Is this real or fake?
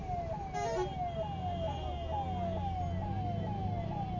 real